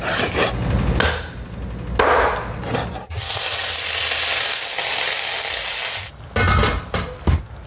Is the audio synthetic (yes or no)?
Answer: no